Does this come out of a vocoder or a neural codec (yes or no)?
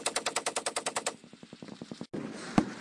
no